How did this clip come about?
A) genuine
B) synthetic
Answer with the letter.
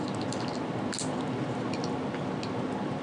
A